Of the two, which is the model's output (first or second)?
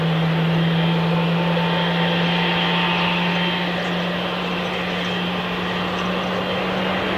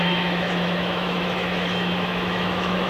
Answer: second